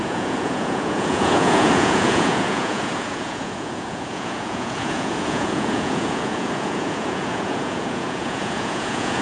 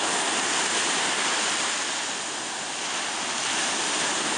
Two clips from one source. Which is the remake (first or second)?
first